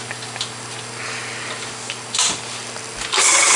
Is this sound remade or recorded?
recorded